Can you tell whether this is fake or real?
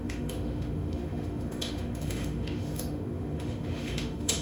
fake